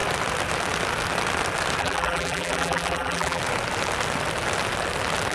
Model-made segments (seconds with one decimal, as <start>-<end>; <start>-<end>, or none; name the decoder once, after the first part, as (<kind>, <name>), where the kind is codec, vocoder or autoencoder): 1.8-3.4 (vocoder, BigVGAN v2)